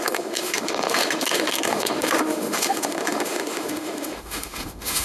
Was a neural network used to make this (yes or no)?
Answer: yes